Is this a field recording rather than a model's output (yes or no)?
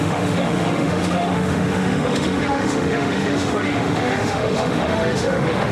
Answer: no